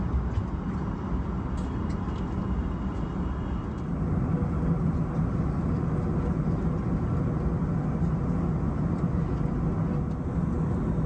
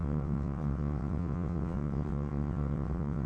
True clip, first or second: first